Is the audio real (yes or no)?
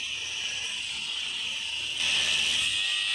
yes